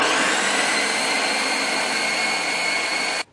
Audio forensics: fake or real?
real